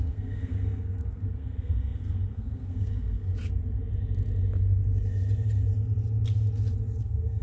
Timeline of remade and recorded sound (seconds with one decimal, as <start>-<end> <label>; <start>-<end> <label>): 0.0-3.3 remade; 3.3-7.0 recorded; 7.0-7.4 remade